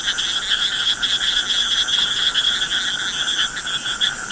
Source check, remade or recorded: recorded